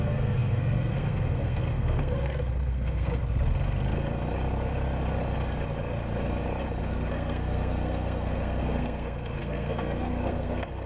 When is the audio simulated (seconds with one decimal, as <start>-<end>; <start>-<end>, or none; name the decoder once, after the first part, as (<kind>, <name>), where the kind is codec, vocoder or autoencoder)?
0.0-3.2 (codec, SNAC); 6.8-10.9